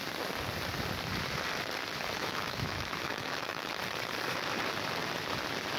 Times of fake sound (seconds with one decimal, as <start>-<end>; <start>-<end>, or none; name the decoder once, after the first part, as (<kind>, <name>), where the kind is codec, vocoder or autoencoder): 2.2-3.7 (autoencoder, DAC-VAE)